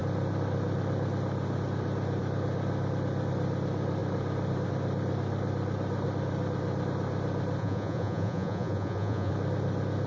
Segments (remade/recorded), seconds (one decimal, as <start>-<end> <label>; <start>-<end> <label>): 0.0-7.6 recorded; 7.6-9.3 remade; 9.3-10.1 recorded